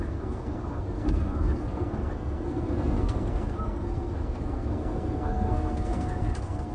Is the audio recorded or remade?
remade